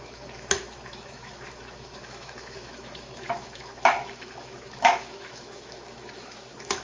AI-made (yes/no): yes